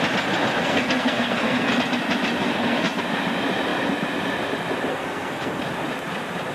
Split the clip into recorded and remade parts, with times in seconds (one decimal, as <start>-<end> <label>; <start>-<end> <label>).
0.0-0.6 recorded; 0.6-1.7 remade; 1.7-2.4 recorded; 2.4-3.0 remade; 3.0-4.9 recorded; 4.9-5.6 remade; 5.6-6.5 recorded